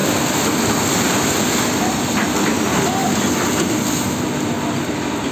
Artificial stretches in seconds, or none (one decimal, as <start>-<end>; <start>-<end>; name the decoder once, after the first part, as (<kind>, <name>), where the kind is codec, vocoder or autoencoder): none